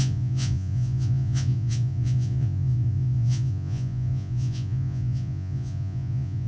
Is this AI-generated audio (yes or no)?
yes